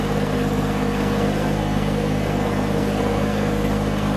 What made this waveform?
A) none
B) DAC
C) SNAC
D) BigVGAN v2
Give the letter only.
C